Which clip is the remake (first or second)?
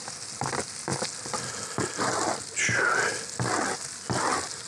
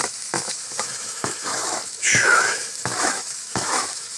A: second